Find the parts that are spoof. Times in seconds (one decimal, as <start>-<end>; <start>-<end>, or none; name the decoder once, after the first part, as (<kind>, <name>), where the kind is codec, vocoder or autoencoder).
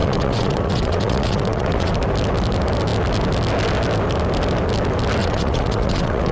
0.0-1.9 (vocoder, WaveNeXt); 5.2-6.3